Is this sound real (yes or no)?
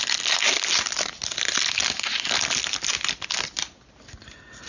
yes